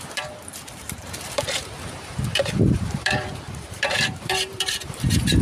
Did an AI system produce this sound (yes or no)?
yes